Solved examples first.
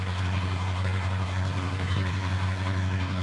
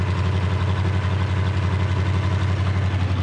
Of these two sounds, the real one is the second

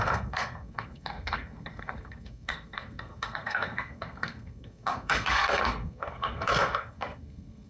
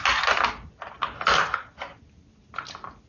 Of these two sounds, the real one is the second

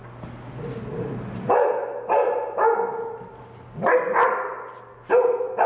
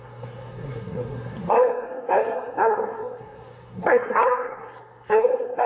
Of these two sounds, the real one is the first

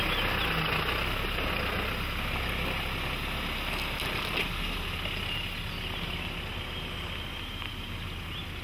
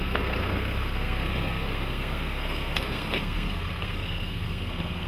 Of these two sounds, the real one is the first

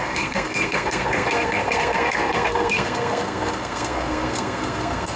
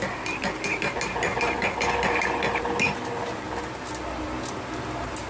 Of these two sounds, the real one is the second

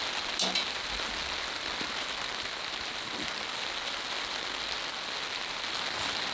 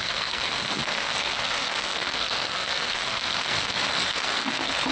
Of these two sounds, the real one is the first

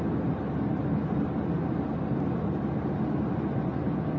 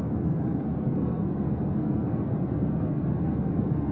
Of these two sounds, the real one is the first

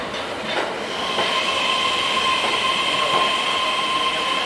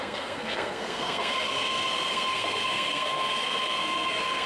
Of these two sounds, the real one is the first